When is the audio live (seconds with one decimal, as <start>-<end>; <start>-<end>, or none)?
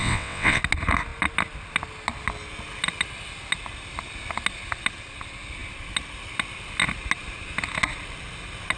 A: 0.6-8.8